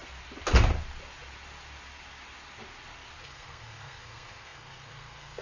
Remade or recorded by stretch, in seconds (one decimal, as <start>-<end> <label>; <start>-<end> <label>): 0.0-3.2 recorded; 3.2-5.4 remade